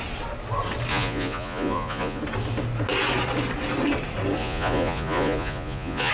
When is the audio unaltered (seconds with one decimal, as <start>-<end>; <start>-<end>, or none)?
0.0-0.9; 2.2-4.4